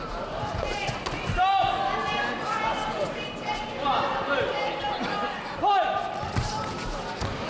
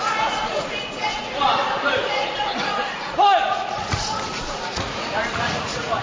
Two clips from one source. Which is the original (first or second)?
first